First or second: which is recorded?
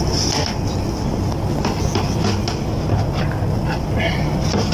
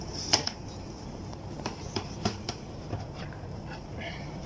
first